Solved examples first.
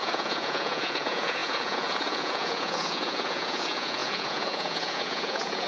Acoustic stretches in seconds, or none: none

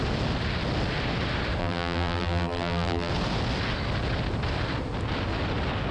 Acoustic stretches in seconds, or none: 0.0-1.6; 3.1-5.9

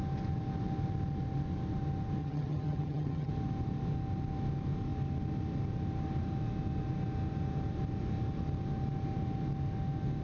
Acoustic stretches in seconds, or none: 0.0-2.2; 3.3-10.2

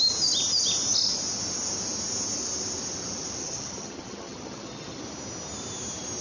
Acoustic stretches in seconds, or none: 0.0-3.4; 5.0-6.2

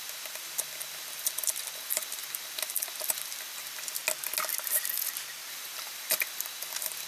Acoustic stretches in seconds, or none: 4.0-5.5

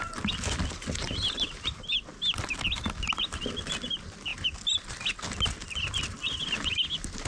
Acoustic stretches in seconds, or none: 0.0-7.3

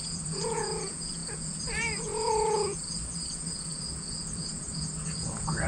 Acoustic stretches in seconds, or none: none